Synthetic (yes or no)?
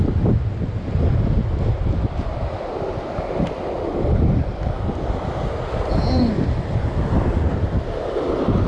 no